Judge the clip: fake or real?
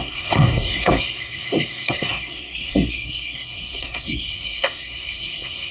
fake